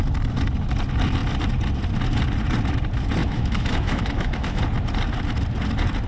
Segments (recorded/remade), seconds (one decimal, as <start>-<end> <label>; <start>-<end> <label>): 0.0-3.2 recorded; 3.2-4.6 remade; 4.6-6.1 recorded